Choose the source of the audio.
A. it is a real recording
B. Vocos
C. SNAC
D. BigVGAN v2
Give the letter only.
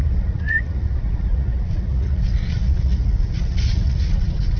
B